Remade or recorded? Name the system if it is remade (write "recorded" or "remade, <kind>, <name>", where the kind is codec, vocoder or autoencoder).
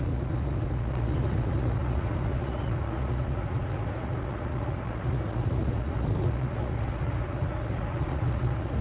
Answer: remade, vocoder, Vocos